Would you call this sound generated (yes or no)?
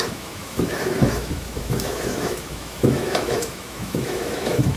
yes